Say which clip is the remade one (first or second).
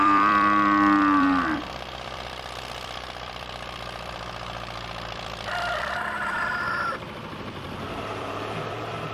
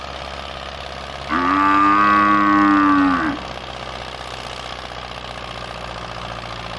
first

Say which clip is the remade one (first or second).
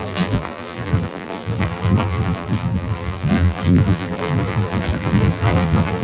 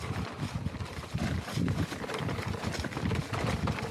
first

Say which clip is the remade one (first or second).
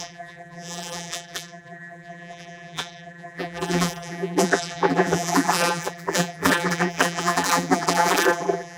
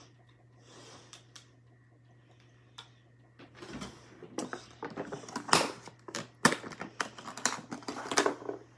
first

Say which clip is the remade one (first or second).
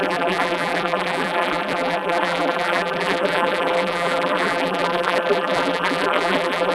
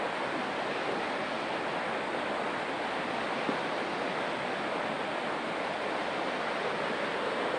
first